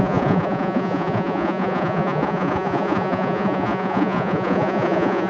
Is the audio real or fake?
fake